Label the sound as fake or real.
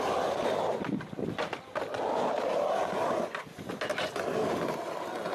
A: real